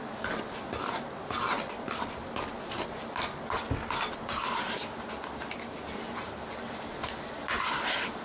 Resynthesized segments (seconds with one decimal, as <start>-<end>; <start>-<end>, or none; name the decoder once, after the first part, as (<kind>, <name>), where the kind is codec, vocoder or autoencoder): none